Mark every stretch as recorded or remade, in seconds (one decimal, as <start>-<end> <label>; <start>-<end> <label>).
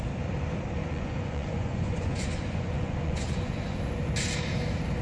0.0-0.8 recorded; 0.8-3.8 remade; 3.8-5.0 recorded